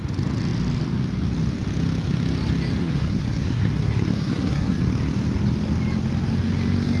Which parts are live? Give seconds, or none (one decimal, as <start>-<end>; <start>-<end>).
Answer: 0.0-2.8; 4.8-7.0